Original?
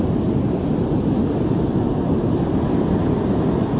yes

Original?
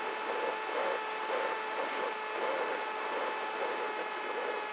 yes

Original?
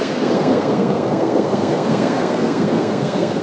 no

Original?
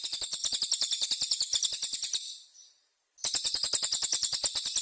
yes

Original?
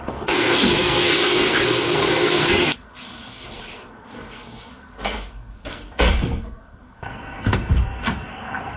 no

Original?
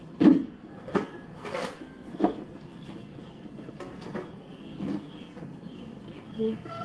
no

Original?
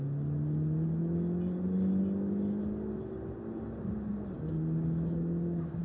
yes